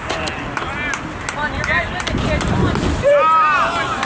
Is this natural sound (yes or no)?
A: yes